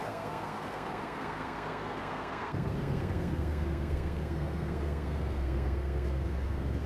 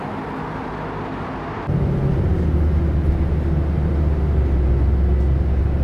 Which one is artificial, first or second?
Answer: first